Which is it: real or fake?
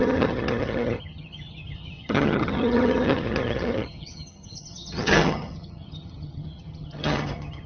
fake